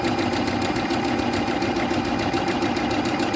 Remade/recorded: recorded